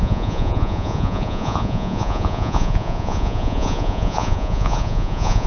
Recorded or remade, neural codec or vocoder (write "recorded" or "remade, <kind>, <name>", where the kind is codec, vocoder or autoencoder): remade, vocoder, Vocos